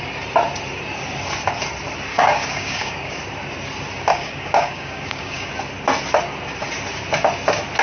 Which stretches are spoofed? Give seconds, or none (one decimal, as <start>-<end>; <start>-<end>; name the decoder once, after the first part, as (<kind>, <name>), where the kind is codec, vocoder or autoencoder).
2.1-3.2 (codec, DAC); 4.1-5.5